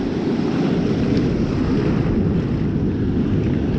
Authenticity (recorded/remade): recorded